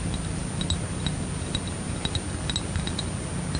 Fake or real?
real